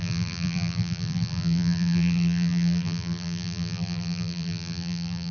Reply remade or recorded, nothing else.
remade